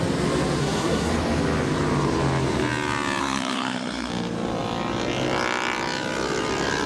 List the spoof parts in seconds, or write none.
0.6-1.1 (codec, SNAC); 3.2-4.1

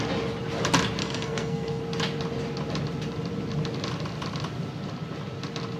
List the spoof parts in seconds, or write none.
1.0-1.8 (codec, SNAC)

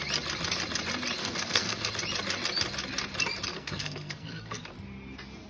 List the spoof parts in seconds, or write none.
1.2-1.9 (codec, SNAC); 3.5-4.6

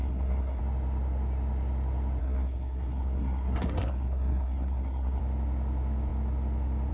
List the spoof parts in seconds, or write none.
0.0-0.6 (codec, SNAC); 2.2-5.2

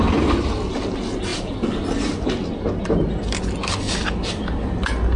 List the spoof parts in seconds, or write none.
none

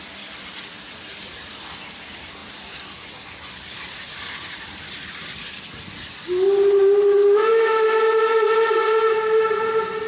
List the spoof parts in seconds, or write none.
none

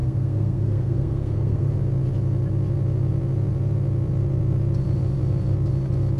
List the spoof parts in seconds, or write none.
0.0-1.7 (codec, SNAC)